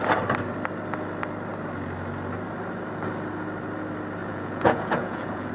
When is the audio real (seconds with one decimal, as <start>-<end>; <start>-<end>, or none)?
0.0-4.2